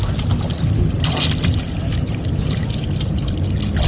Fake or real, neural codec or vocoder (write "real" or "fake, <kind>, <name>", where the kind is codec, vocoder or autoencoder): real